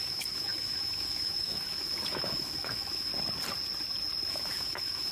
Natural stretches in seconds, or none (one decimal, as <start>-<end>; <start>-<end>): 3.1-4.3